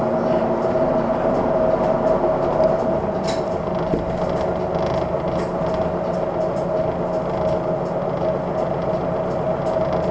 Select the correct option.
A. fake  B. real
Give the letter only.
B